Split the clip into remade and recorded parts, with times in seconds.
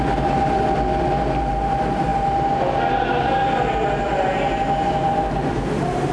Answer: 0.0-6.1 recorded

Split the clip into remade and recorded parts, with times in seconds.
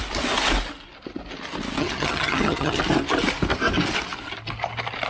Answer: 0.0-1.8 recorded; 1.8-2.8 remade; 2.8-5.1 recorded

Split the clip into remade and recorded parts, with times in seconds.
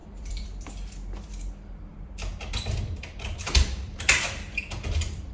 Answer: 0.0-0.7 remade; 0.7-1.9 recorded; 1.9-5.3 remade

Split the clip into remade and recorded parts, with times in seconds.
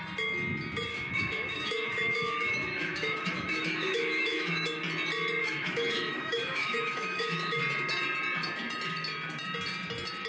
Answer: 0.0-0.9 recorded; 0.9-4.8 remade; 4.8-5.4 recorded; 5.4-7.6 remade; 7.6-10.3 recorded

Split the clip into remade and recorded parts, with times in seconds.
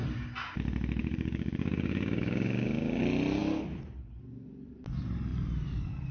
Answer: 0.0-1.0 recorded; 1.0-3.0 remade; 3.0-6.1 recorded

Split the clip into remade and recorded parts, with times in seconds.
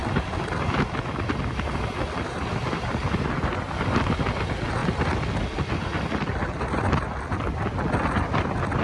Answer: 0.0-8.8 recorded